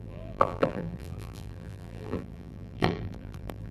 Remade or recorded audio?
remade